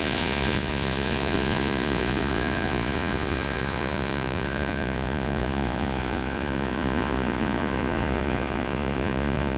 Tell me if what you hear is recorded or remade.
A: remade